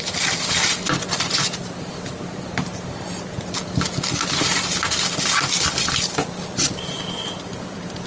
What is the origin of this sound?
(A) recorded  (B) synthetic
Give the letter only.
A